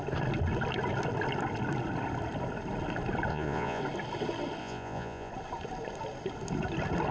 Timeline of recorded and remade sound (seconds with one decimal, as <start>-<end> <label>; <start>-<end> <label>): 0.0-3.3 recorded; 3.3-3.8 remade; 3.8-4.6 recorded; 4.6-5.3 remade; 5.3-7.1 recorded